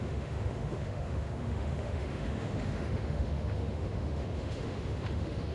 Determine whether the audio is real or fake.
fake